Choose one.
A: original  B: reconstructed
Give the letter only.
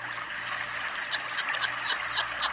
A